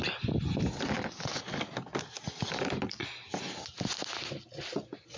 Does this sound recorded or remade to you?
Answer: recorded